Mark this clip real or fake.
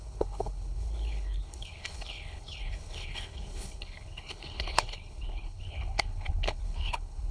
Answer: fake